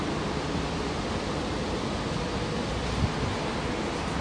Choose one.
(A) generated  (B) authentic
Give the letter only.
B